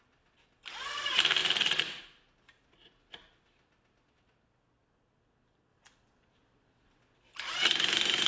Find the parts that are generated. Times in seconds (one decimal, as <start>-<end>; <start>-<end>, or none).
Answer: none